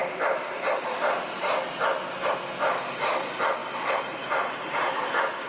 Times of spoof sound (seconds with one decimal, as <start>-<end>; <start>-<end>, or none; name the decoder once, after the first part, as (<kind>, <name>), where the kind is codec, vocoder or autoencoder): none